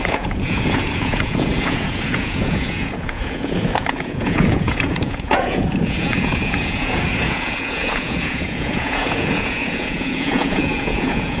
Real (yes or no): no